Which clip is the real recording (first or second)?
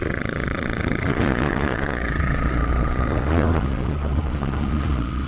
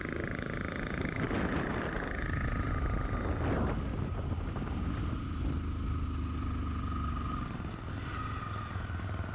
second